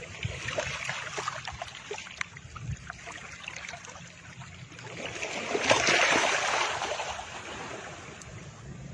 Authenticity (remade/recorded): recorded